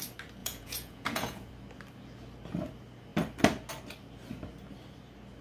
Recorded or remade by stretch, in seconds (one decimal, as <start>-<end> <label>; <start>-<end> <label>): 0.0-0.4 recorded; 0.4-1.5 remade; 1.5-5.4 recorded